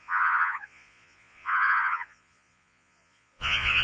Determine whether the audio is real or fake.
fake